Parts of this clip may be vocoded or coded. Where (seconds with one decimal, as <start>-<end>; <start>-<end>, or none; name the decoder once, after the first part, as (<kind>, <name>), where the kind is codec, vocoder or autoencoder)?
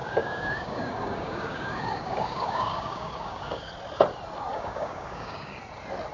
0.0-3.7 (codec, DAC); 4.5-5.6